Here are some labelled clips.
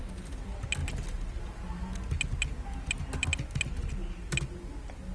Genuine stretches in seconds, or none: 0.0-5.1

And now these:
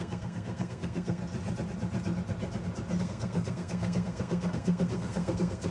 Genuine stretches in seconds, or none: 1.2-3.0

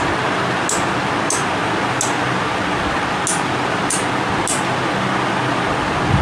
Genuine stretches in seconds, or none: 0.0-6.2

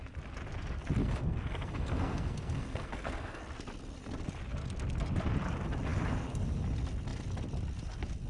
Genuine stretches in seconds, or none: 0.0-1.0; 3.4-8.3

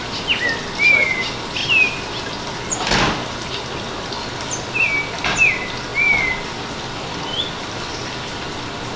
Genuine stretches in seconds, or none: 0.0-9.0

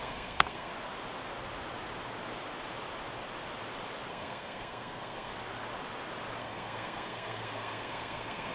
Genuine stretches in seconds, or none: 0.7-4.1; 5.3-6.4

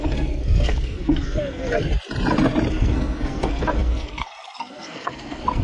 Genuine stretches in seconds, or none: 1.9-2.7

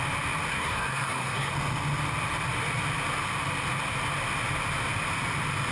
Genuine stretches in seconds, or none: 0.0-0.5; 1.5-5.7